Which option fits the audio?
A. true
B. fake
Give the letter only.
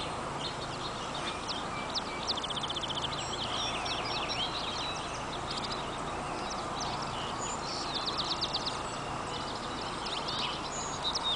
A